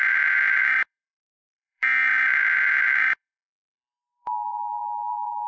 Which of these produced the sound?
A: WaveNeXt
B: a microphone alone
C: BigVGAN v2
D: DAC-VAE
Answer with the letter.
C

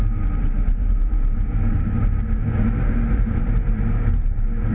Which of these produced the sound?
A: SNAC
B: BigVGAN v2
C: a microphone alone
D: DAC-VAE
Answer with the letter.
B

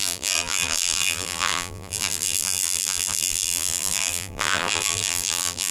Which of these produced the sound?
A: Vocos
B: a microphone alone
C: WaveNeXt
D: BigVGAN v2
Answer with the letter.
D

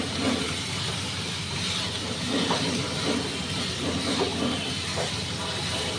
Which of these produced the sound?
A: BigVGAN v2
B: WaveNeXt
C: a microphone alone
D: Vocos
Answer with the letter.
A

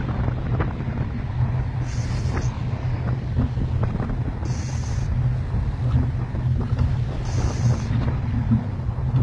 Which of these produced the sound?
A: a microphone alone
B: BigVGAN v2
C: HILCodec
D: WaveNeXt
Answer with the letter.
A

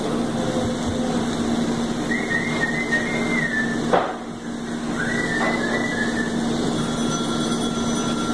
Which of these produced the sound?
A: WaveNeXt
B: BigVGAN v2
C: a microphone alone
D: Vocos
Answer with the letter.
C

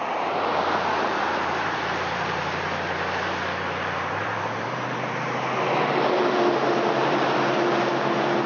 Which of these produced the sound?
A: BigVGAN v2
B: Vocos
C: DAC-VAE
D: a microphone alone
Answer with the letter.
A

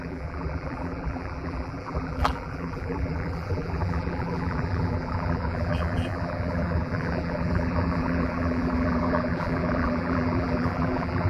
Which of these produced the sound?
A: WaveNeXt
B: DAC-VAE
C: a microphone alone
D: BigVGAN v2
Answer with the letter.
D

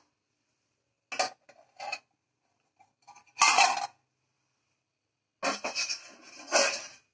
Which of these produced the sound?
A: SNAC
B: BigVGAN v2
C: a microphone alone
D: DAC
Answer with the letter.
C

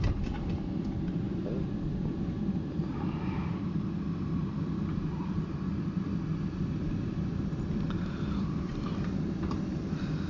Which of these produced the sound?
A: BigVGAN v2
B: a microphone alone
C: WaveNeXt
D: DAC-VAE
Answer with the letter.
A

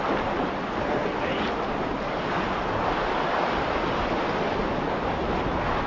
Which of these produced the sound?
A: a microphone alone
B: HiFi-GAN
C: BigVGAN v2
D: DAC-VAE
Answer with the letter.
A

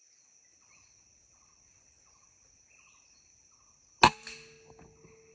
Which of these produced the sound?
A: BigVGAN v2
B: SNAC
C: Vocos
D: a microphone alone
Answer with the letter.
D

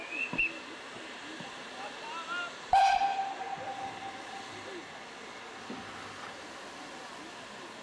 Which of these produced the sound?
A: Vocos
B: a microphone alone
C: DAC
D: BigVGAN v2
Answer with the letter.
B